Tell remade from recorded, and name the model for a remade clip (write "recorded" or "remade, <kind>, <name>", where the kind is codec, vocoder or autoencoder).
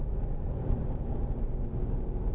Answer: remade, vocoder, BigVGAN v2